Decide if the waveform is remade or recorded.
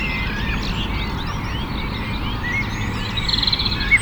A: recorded